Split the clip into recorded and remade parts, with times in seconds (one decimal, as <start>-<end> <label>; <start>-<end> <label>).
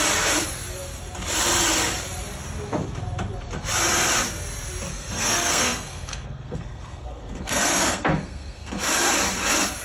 0.0-4.9 recorded; 4.9-8.7 remade; 8.7-9.8 recorded